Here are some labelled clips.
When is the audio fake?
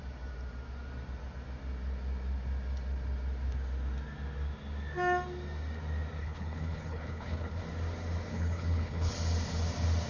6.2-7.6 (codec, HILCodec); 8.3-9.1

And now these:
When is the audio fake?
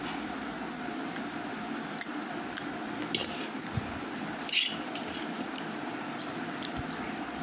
none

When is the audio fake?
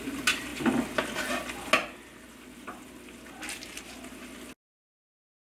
none